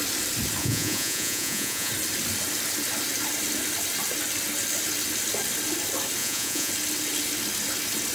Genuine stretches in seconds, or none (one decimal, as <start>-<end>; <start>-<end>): 0.0-0.6; 1.9-6.2; 6.7-8.1